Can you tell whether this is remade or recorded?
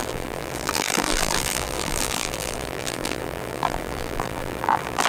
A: remade